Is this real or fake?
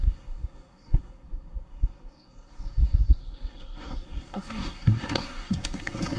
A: fake